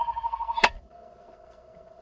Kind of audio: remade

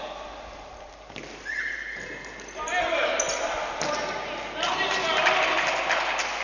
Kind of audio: recorded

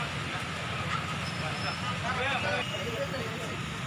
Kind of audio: recorded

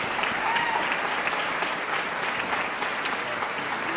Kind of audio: recorded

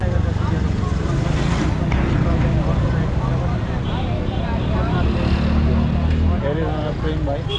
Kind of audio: recorded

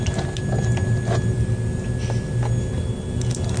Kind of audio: recorded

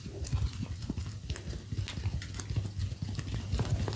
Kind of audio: recorded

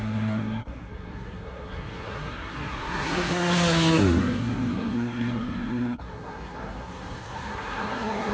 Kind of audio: remade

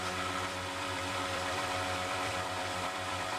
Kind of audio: remade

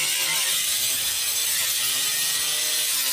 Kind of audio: recorded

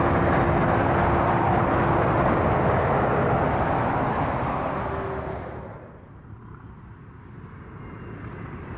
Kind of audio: recorded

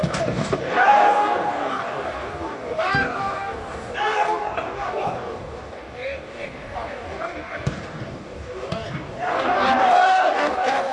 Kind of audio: remade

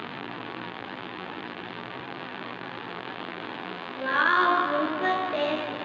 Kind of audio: remade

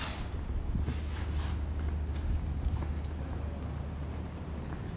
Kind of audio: recorded